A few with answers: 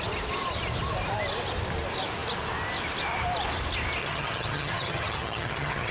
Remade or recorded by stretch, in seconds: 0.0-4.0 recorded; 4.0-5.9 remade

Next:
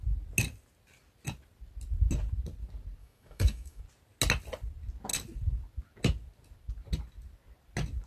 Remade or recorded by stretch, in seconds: 0.0-3.0 recorded; 3.0-3.8 remade; 3.8-8.1 recorded